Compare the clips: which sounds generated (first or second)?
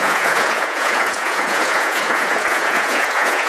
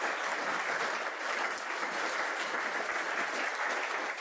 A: first